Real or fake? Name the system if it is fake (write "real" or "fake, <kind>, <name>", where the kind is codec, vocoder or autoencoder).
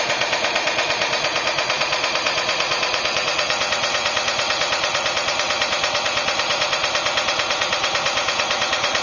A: fake, vocoder, Vocos